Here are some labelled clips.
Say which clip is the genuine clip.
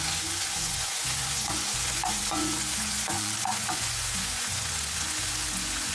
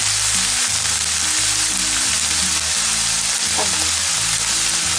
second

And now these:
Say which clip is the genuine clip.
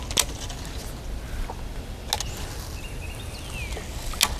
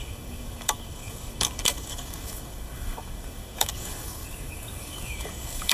first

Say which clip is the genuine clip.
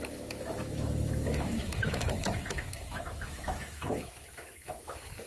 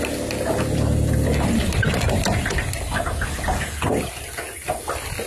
second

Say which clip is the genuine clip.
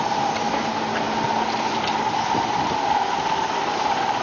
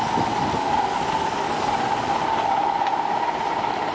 second